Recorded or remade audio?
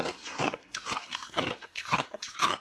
remade